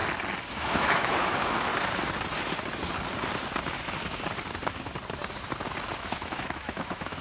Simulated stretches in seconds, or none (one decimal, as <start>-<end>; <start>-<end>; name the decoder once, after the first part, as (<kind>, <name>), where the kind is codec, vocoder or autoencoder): 0.5-1.7 (autoencoder, DAC-VAE); 6.0-7.2